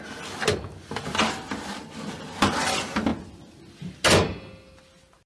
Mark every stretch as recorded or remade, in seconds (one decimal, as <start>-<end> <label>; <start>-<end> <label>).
0.0-5.3 recorded